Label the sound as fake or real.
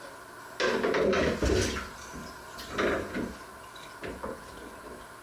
real